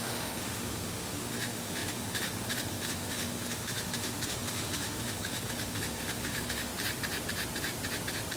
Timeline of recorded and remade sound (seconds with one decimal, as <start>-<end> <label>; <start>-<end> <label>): 0.0-6.7 remade; 6.7-8.4 recorded